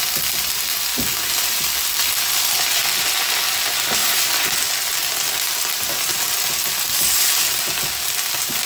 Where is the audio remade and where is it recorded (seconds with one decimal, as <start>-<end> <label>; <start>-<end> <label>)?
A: 0.0-8.7 recorded